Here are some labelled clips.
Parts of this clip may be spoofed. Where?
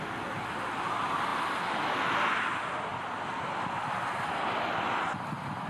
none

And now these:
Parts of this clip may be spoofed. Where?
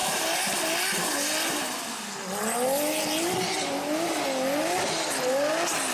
none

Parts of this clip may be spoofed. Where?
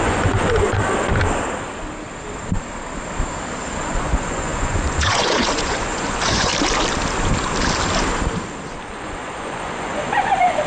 0.0-0.8 (vocoder, Vocos); 3.8-6.5; 8.9-10.7